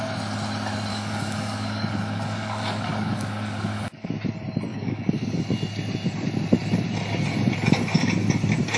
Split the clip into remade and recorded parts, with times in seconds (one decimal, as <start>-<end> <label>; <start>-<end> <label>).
0.0-0.9 recorded; 0.9-4.1 remade; 4.1-4.7 recorded; 4.7-5.4 remade; 5.4-8.8 recorded